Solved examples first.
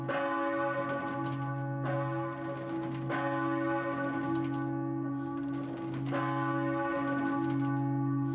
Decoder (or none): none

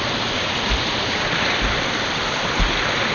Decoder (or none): none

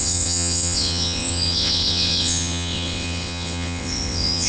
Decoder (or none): vocoder, WaveNeXt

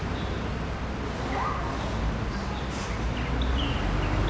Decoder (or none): none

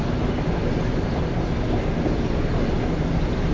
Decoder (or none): none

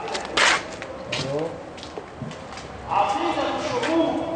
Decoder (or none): none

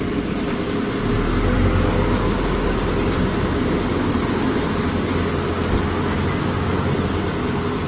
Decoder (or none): none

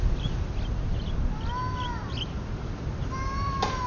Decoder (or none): none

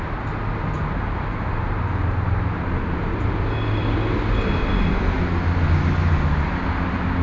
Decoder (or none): none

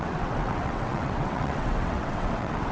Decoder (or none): vocoder, WaveNeXt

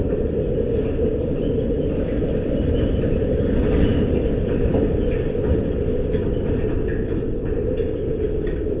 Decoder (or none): none